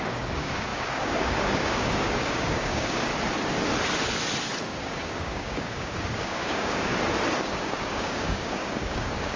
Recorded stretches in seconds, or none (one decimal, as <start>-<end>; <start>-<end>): 3.1-4.6; 6.9-7.4